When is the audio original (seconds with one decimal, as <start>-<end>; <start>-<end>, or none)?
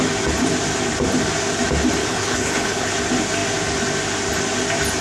0.0-2.0; 2.9-5.0